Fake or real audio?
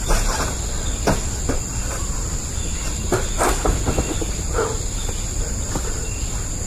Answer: real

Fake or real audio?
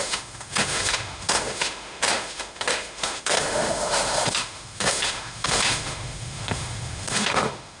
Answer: fake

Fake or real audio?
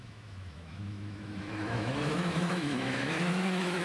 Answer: fake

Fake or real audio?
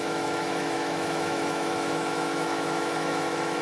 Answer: fake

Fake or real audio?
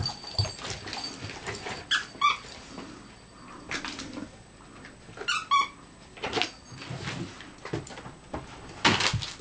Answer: real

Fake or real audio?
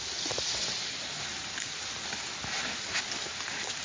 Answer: real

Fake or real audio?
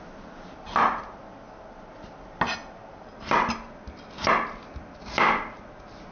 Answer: real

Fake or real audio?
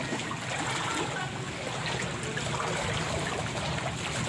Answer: real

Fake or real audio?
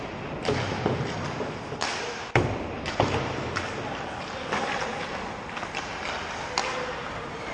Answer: real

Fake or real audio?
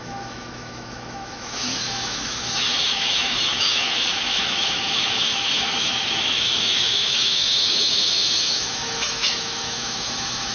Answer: fake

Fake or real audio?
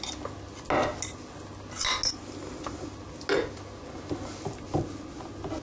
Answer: real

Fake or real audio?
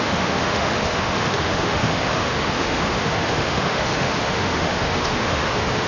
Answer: fake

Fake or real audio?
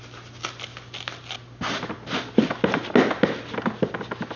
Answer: real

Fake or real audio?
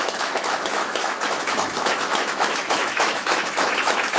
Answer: fake